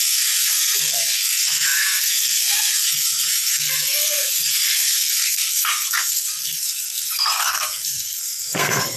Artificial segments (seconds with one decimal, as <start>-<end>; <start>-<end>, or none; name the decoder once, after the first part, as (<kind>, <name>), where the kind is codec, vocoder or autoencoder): 0.0-9.0 (codec, SNAC)